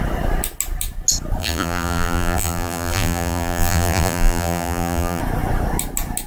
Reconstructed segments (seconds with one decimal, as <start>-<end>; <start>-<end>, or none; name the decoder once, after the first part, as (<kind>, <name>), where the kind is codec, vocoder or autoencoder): 1.4-5.2 (vocoder, BigVGAN v2)